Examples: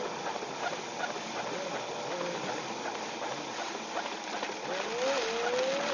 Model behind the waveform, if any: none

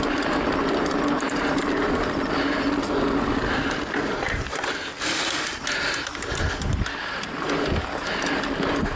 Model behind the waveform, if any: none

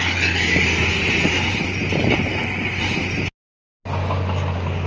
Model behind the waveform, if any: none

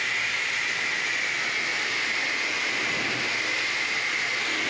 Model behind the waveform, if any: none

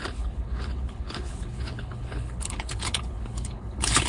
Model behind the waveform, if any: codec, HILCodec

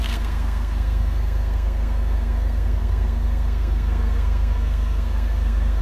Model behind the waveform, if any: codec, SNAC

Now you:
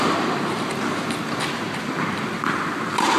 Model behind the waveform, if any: vocoder, BigVGAN v2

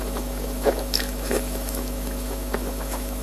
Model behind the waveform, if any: autoencoder, DAC-VAE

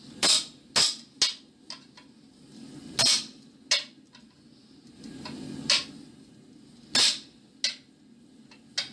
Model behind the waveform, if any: none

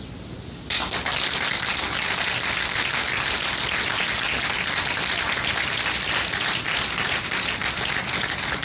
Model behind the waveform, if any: none